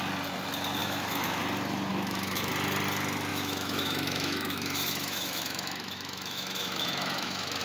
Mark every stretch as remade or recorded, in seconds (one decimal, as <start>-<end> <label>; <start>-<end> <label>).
0.0-0.8 recorded; 0.8-1.4 remade; 1.4-1.9 recorded; 1.9-2.5 remade; 2.5-3.3 recorded; 3.3-7.6 remade